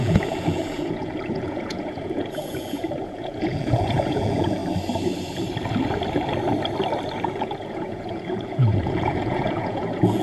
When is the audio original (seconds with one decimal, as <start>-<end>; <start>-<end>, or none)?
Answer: 4.6-7.3